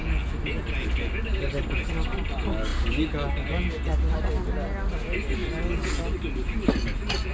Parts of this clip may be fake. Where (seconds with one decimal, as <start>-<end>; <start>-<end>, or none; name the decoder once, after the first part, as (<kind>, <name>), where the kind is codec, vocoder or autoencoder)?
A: none